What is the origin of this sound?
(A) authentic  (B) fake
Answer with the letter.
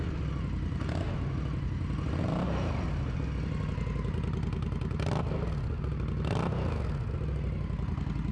A